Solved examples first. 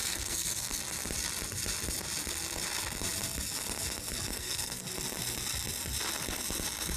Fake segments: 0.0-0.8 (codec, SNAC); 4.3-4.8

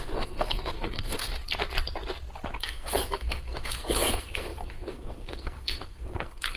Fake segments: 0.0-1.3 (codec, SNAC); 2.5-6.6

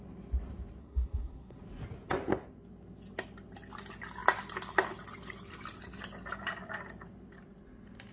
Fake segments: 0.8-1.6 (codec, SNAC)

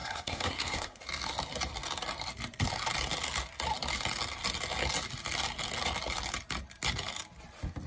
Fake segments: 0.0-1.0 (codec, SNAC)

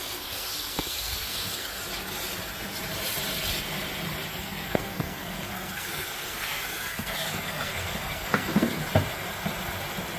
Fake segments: 0.0-1.8 (codec, SNAC); 4.3-8.8